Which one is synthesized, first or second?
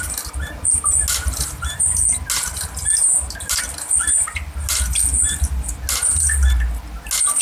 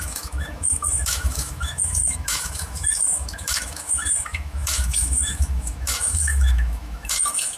second